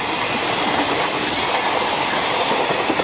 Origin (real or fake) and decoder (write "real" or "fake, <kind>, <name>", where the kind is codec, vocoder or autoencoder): real